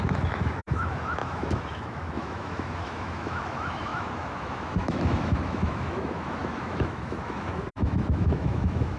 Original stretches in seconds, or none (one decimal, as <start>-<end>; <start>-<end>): none